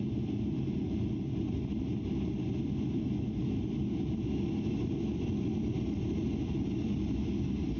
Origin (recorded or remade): recorded